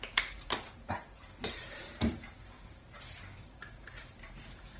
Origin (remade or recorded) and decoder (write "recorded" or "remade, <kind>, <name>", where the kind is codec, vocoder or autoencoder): remade, vocoder, BigVGAN v2